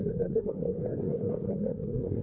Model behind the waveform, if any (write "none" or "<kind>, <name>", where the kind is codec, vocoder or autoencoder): codec, SNAC